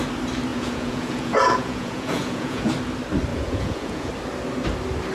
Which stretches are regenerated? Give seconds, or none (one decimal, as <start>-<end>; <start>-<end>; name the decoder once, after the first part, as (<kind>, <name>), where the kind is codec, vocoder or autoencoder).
0.5-2.7 (vocoder, Vocos); 3.3-4.1